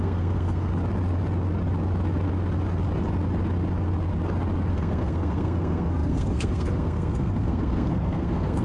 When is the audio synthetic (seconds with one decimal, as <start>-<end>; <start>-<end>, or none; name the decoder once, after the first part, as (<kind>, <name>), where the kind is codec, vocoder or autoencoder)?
0.0-0.7 (codec, SNAC); 4.7-8.6